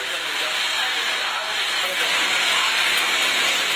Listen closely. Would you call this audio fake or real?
real